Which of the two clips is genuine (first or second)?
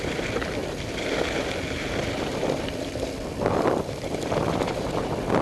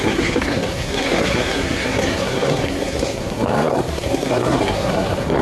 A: first